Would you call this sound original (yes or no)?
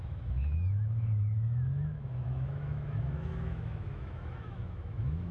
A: no